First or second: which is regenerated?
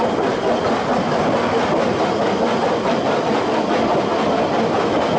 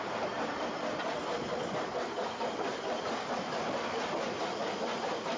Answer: second